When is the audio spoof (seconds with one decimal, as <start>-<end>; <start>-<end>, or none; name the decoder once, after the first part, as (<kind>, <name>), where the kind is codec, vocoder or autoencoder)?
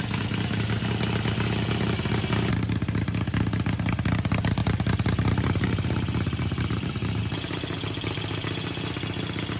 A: 4.6-7.2 (vocoder, BigVGAN v2)